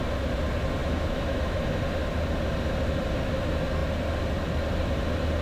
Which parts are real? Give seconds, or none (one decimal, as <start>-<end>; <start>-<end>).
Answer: 0.0-0.8; 1.6-5.4